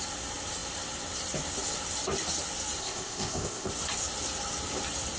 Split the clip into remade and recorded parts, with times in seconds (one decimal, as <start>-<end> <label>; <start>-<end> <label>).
0.0-2.8 recorded; 2.8-3.7 remade; 3.7-5.2 recorded